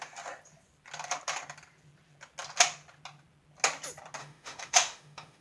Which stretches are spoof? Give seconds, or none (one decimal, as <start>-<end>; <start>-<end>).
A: 4.2-5.4